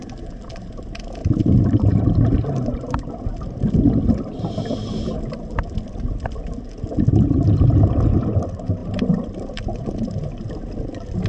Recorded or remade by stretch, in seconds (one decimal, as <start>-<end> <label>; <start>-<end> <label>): 0.0-1.2 recorded; 1.2-1.9 remade; 1.9-8.8 recorded; 8.8-10.3 remade; 10.3-11.3 recorded

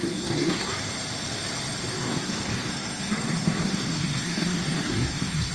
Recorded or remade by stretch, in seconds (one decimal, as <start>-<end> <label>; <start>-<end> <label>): 0.0-0.7 remade; 0.7-2.0 recorded; 2.0-5.5 remade